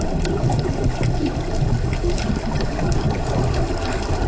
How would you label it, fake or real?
real